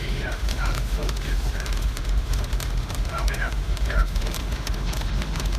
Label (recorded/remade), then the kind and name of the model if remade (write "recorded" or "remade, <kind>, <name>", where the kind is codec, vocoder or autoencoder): remade, autoencoder, DAC-VAE